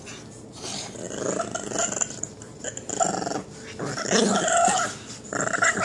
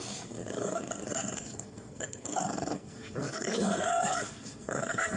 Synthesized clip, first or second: second